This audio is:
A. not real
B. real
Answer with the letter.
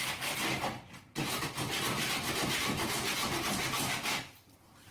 A